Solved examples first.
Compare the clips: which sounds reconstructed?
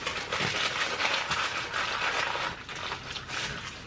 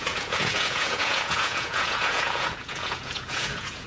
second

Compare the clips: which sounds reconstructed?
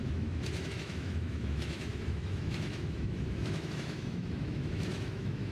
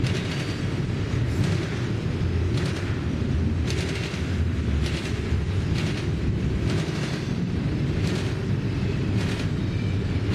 first